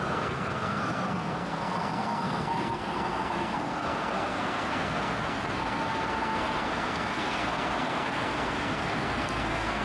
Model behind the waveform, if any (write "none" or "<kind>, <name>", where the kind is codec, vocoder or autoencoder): codec, SNAC